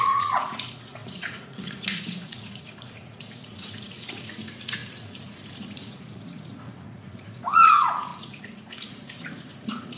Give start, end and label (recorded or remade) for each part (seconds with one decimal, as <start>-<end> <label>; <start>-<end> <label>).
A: 0.0-10.0 remade